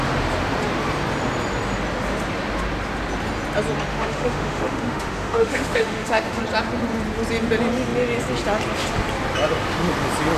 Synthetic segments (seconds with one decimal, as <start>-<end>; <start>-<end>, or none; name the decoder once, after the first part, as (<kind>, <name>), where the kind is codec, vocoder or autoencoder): 3.9-6.4 (autoencoder, DAC-VAE)